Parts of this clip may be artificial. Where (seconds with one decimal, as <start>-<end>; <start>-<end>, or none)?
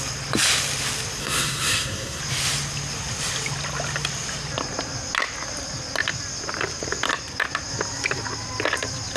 1.2-2.2